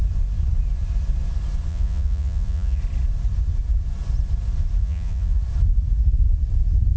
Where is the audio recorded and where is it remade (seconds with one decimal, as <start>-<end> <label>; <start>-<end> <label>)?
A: 0.0-1.7 recorded; 1.7-2.8 remade; 2.8-4.8 recorded; 4.8-5.4 remade; 5.4-7.0 recorded